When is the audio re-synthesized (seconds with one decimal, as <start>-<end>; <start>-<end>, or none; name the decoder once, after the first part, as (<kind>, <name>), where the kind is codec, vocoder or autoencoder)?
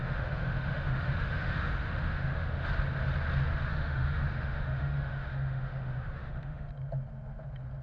0.0-2.7 (autoencoder, DAC-VAE); 3.7-6.7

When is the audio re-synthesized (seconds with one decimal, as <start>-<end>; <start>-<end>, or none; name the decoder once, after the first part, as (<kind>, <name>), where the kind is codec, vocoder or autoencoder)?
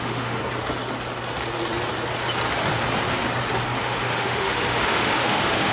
0.0-0.4 (autoencoder, DAC-VAE); 3.8-5.7